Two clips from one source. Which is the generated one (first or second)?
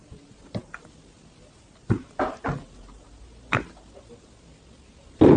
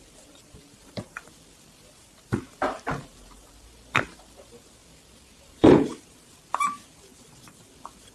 second